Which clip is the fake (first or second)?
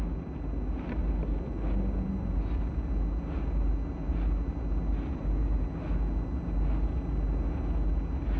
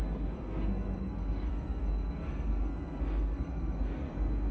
second